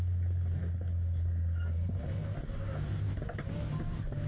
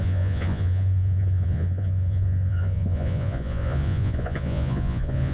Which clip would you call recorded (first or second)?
first